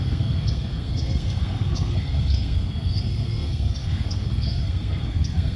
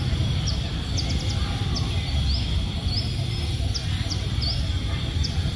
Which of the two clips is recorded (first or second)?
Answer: second